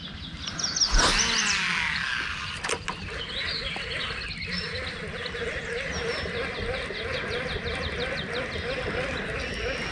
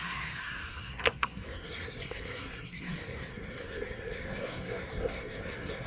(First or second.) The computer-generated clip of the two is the second